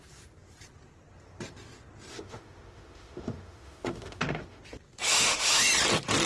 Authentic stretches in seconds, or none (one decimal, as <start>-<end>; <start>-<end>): 0.0-2.1; 4.6-5.1; 5.7-6.3